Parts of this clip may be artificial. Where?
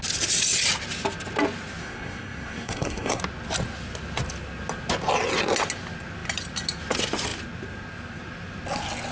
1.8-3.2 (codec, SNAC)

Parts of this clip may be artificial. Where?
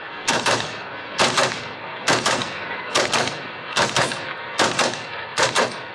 0.0-5.9 (codec, SNAC)